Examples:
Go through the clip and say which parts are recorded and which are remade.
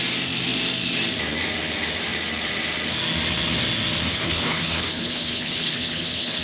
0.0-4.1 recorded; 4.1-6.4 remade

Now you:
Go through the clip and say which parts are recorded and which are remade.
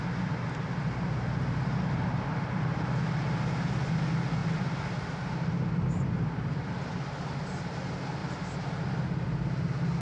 0.0-10.0 recorded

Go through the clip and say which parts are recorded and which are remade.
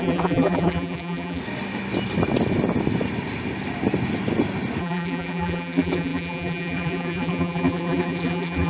0.0-1.4 remade; 1.4-4.8 recorded; 4.8-8.7 remade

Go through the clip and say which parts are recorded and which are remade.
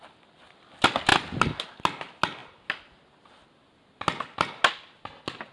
0.0-5.5 recorded